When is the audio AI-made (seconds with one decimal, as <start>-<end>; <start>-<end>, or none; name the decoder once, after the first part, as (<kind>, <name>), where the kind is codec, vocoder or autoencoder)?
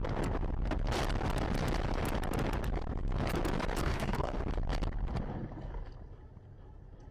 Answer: 3.8-4.4 (codec, DAC)